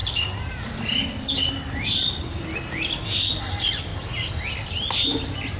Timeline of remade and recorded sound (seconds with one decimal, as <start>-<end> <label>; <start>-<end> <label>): 0.0-3.9 remade; 3.9-5.6 recorded